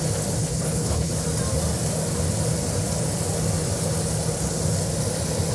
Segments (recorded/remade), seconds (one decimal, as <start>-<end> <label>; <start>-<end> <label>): 0.0-0.4 recorded; 0.4-1.1 remade; 1.1-5.5 recorded